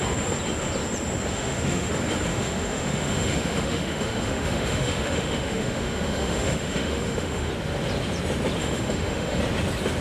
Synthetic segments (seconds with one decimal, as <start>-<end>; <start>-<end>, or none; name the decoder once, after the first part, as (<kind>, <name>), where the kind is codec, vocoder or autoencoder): 1.3-1.9 (autoencoder, DAC-VAE); 2.3-7.5; 8.6-9.4